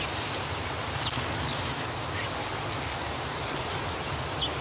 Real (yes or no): yes